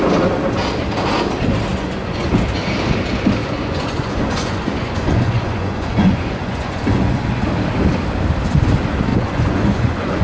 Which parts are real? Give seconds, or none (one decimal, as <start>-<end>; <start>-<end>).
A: 0.0-1.7; 2.3-3.4; 7.4-9.1